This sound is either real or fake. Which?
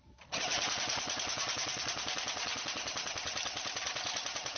real